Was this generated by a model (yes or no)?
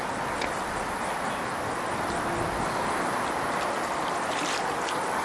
no